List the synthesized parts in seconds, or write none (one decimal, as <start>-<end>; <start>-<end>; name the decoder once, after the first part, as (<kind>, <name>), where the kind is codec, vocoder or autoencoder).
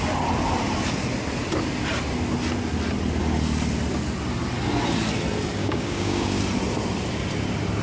5.6-6.4 (codec, DAC)